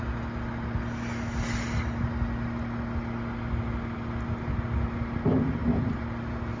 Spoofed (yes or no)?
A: no